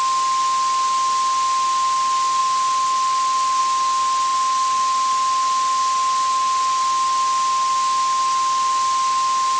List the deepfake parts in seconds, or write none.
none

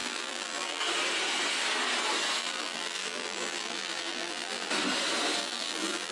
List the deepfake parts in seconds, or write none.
0.0-0.8 (vocoder, BigVGAN v2); 2.4-4.7; 5.4-6.1

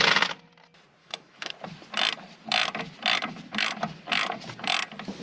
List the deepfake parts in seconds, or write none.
1.0-1.5 (autoencoder, DAC-VAE)

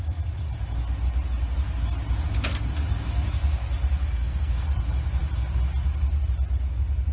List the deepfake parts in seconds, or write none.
4.0-4.8 (codec, SNAC)

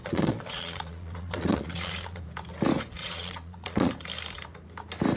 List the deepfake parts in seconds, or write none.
0.0-2.2 (vocoder, Vocos); 3.0-3.9